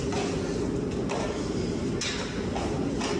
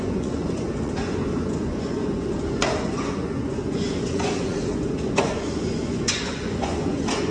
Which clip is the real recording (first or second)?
first